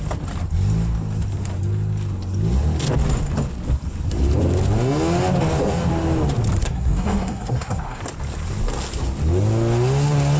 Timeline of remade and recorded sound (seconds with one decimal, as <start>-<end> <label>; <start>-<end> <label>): 0.0-6.6 recorded; 6.6-8.0 remade; 8.0-10.4 recorded